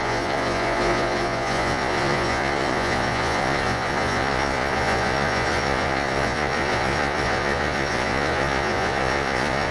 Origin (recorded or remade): remade